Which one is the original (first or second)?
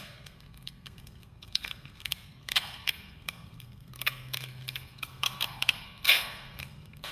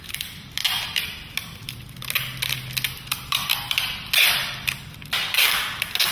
second